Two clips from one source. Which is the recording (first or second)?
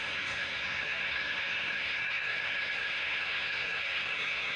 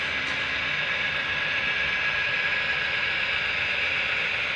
second